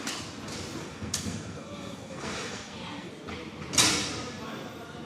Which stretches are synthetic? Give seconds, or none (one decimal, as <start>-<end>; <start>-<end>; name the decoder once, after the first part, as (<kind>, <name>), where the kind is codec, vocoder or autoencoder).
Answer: 0.8-3.1 (codec, SNAC)